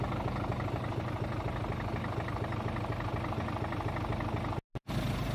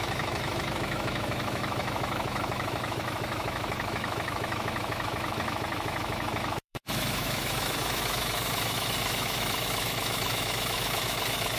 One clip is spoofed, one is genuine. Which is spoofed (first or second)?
second